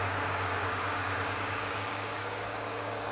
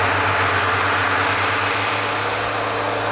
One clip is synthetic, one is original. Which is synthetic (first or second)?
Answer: first